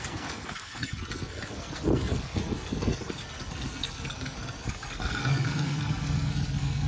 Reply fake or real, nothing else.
fake